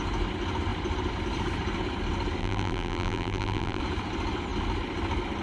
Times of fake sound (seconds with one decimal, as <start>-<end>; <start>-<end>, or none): 2.4-3.8

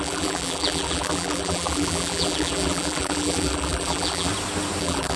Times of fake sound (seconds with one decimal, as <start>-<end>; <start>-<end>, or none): 0.0-4.3; 4.8-5.2